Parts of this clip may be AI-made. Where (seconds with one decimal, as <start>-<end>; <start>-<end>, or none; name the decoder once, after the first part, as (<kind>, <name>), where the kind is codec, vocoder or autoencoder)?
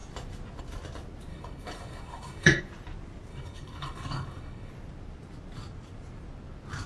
1.3-2.6 (codec, DAC); 3.3-4.7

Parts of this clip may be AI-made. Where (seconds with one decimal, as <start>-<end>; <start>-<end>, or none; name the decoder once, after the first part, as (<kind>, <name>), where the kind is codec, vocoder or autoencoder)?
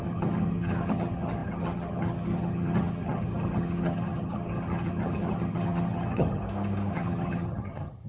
0.0-6.4 (vocoder, HiFi-GAN); 6.9-8.1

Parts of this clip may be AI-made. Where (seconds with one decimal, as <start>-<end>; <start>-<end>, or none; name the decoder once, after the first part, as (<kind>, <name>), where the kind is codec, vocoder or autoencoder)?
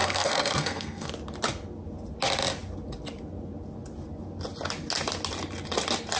0.0-1.1 (codec, SNAC)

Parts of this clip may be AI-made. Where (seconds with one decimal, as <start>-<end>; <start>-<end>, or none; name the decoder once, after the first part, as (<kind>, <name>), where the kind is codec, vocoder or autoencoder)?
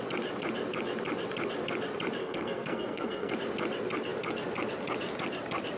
2.2-3.3 (codec, SNAC)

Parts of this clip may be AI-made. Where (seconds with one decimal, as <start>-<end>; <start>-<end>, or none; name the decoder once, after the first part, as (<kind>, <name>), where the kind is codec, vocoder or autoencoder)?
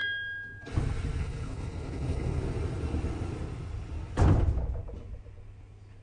1.2-2.4 (codec, HILCodec)